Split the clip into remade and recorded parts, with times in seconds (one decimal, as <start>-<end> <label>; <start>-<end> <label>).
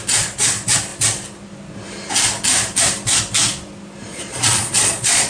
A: 0.0-4.1 recorded; 4.1-5.3 remade